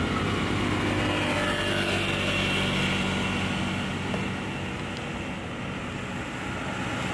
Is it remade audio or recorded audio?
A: recorded